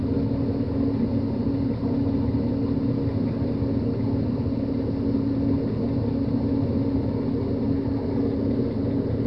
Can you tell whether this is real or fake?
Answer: real